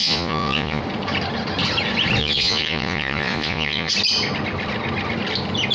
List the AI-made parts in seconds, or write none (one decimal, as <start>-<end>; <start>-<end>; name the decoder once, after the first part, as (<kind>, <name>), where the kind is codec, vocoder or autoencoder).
0.0-0.8 (vocoder, Vocos); 2.2-3.9